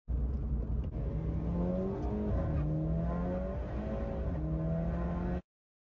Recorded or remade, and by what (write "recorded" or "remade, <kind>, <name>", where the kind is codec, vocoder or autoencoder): recorded